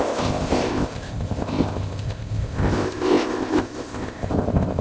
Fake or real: fake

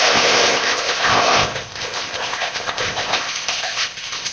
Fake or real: fake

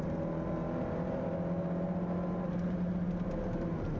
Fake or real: real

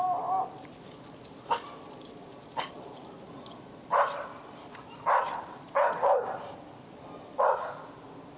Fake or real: real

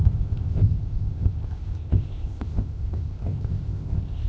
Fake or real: fake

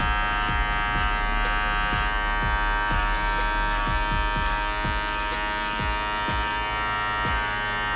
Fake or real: real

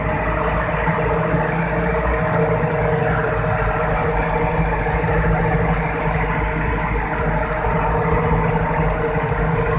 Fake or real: real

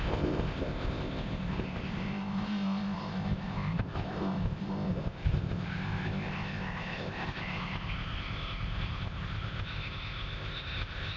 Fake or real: fake